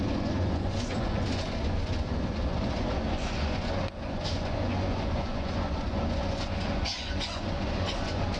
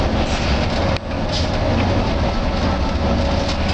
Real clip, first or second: second